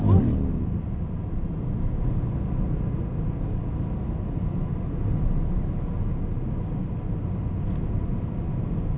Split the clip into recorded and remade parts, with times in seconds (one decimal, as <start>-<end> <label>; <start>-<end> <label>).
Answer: 0.0-9.0 recorded